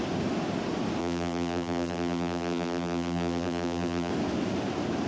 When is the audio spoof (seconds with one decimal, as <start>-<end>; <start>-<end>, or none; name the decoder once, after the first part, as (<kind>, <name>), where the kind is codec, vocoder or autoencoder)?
1.0-4.1 (vocoder, BigVGAN v2)